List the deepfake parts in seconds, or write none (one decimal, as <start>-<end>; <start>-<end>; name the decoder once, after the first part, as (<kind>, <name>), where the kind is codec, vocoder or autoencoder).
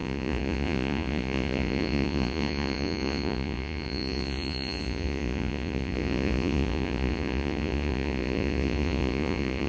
0.0-9.7 (vocoder, Vocos)